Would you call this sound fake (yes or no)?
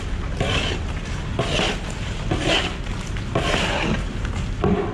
no